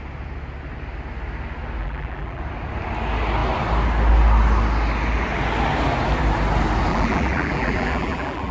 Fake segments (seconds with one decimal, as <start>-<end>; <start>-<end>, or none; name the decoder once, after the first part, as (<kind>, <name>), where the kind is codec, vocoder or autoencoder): 1.8-2.4 (vocoder, BigVGAN v2); 6.9-8.5